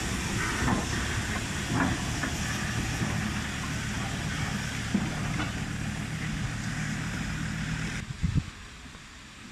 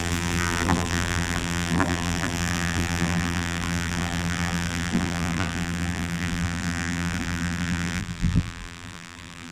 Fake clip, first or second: second